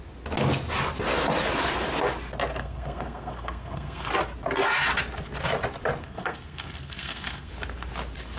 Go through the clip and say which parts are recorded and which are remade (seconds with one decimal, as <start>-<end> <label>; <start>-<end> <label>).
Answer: 0.0-2.6 recorded; 2.6-4.1 remade; 4.1-6.0 recorded; 6.0-7.5 remade; 7.5-8.4 recorded